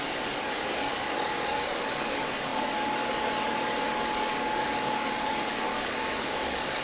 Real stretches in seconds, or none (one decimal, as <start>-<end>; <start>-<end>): none